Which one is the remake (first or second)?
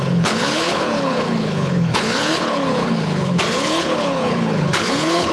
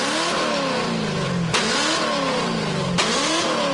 first